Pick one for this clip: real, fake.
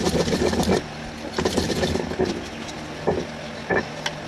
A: real